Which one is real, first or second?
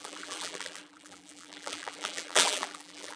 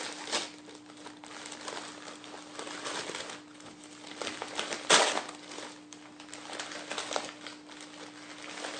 second